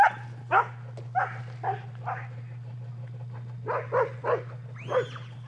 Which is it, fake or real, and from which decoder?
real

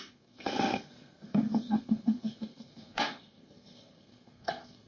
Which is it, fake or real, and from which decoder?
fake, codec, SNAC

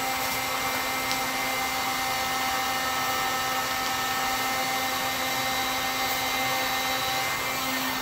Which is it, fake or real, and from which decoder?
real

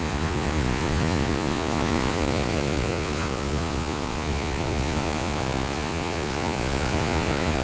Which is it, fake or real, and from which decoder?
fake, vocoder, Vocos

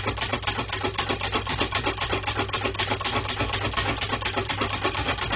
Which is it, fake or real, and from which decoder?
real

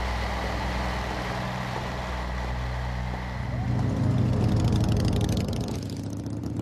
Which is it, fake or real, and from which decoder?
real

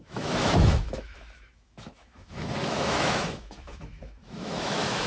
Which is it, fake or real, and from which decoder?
fake, autoencoder, DAC-VAE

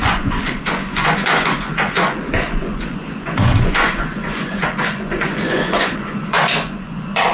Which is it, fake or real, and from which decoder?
fake, vocoder, Vocos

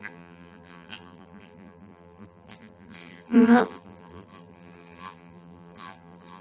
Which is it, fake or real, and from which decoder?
fake, vocoder, BigVGAN v2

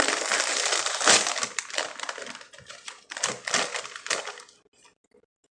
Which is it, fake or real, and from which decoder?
real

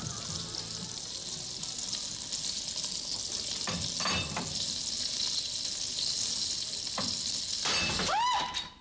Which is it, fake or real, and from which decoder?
real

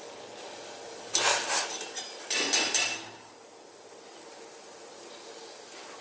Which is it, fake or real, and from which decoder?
real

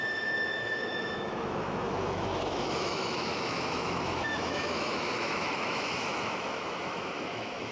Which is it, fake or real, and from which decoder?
fake, autoencoder, DAC-VAE